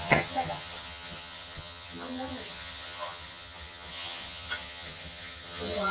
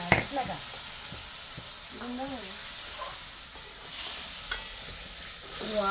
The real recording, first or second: second